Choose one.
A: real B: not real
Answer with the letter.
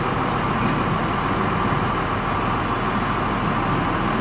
A